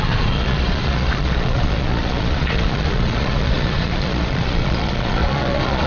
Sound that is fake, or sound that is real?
fake